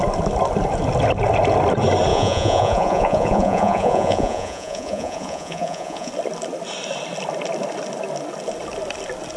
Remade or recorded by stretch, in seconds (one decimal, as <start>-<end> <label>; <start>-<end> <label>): 0.0-2.1 recorded; 2.1-6.1 remade; 6.1-9.4 recorded